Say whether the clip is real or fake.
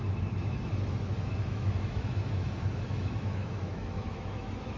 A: fake